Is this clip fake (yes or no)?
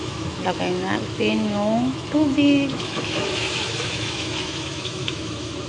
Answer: yes